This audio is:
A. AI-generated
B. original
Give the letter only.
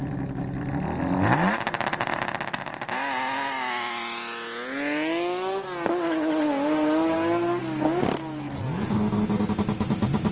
B